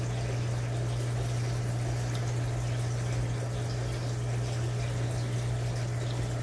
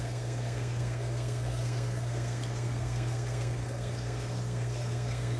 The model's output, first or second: second